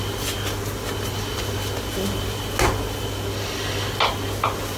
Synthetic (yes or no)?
no